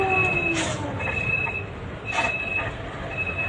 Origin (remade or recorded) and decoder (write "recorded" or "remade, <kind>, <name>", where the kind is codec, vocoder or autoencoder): recorded